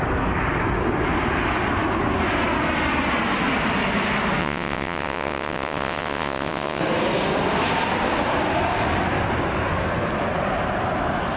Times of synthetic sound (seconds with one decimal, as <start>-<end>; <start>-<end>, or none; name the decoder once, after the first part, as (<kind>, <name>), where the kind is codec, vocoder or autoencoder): 4.4-6.8 (vocoder, WaveNeXt)